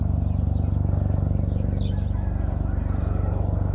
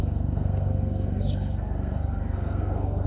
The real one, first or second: first